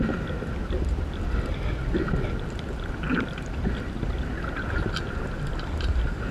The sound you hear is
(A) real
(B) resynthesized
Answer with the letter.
A